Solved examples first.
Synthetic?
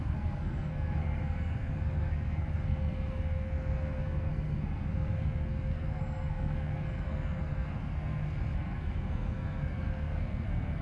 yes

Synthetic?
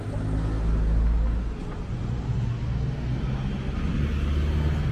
no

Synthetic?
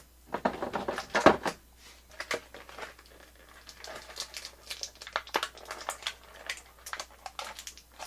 no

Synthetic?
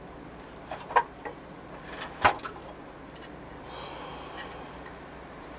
no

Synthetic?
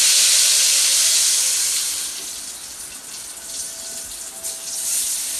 no